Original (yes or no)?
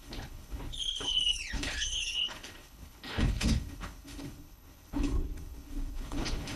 no